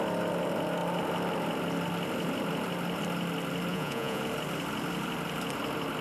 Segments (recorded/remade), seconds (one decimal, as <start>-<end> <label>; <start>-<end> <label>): 0.0-3.7 recorded; 3.7-4.2 remade; 4.2-6.0 recorded